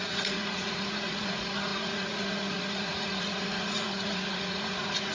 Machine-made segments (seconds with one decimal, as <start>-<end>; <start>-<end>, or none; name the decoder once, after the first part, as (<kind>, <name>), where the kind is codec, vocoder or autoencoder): 0.0-5.1 (vocoder, Vocos)